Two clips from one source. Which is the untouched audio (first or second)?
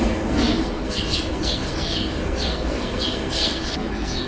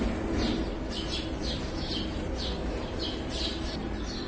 second